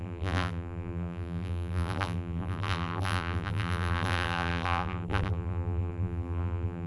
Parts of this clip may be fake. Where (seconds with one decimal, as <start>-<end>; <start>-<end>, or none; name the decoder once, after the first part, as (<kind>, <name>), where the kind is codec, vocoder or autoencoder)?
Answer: 0.0-6.9 (vocoder, BigVGAN v2)